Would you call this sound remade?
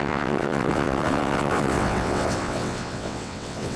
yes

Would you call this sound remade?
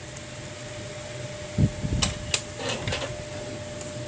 no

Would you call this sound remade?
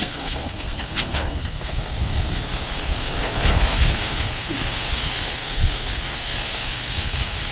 yes